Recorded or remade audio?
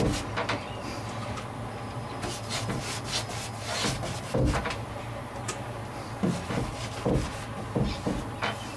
recorded